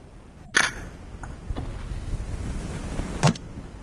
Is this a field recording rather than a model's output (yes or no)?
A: yes